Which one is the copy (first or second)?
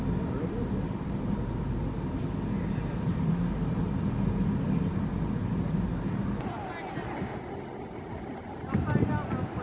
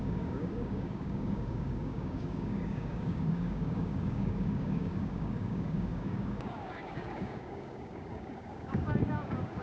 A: second